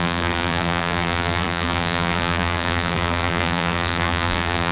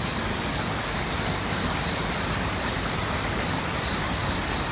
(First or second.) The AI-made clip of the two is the first